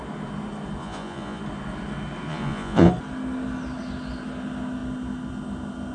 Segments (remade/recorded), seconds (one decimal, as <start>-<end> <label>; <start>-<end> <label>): 0.0-0.8 recorded; 0.8-1.4 remade; 1.4-2.3 recorded; 2.3-2.9 remade; 2.9-5.9 recorded